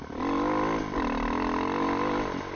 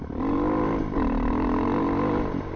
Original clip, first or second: first